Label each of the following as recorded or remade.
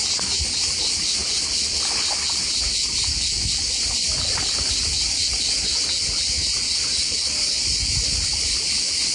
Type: recorded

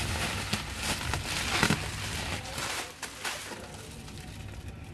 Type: recorded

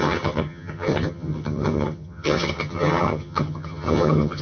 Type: remade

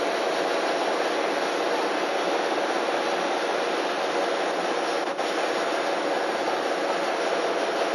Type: recorded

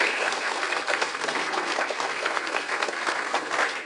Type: remade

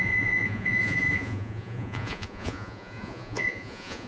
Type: remade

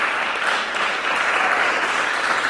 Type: recorded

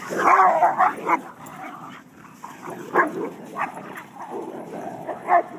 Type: recorded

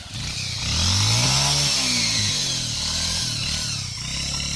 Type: recorded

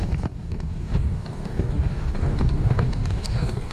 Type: remade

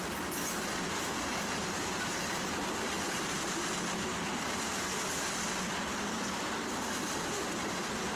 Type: recorded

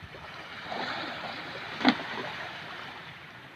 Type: remade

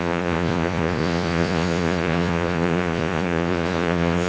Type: remade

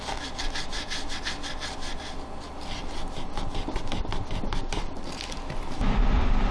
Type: recorded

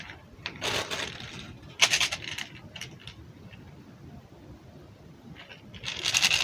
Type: recorded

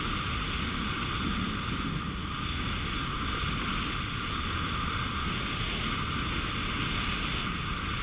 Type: recorded